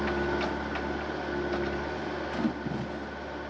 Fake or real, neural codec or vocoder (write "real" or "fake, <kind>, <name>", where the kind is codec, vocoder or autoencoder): real